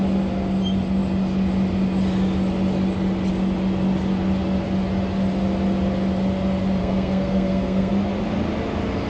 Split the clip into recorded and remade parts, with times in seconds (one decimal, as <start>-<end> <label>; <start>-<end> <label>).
0.0-6.8 recorded; 6.8-7.9 remade; 7.9-9.1 recorded